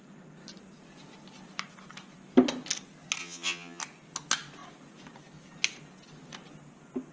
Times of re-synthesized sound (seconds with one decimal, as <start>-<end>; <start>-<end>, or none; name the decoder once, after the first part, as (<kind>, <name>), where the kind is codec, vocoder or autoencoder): 3.2-3.8 (vocoder, HiFi-GAN)

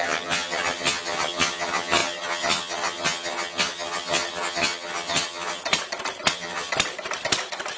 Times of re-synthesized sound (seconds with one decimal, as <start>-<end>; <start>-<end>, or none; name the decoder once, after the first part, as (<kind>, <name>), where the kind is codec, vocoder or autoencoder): 0.0-5.6 (vocoder, HiFi-GAN); 6.3-6.7

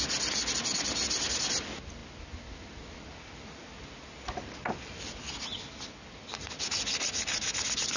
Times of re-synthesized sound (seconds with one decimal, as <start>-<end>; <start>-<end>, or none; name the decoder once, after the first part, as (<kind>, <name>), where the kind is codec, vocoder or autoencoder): none

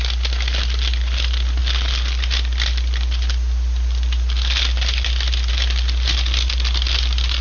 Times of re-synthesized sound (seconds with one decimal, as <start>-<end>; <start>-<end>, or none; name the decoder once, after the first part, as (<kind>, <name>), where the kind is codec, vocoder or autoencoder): none